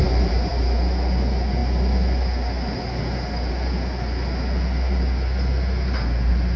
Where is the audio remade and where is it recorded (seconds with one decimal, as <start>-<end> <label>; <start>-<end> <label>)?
0.0-0.5 remade; 0.5-6.6 recorded